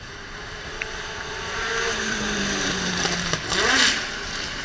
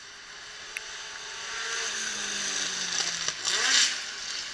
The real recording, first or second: second